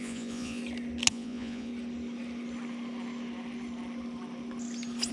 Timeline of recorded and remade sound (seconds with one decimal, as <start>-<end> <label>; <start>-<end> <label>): 0.0-0.6 remade; 0.6-1.1 recorded; 1.1-1.7 remade; 1.7-5.1 recorded